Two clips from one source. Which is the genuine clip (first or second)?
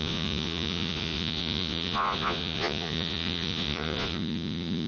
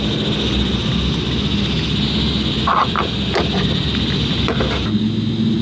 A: second